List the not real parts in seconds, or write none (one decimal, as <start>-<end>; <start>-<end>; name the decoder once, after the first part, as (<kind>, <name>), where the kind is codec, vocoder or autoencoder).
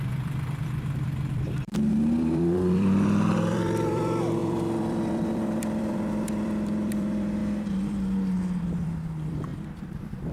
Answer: 0.0-7.4 (vocoder, BigVGAN v2); 8.6-10.3